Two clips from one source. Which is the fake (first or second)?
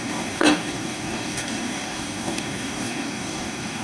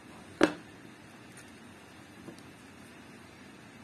first